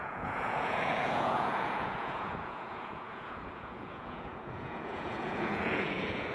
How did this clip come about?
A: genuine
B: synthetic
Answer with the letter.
B